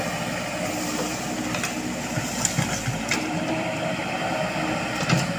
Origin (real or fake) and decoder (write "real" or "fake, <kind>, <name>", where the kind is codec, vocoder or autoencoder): real